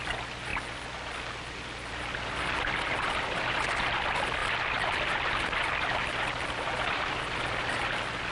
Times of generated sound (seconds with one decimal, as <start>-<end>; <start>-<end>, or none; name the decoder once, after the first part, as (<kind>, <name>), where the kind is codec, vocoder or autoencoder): none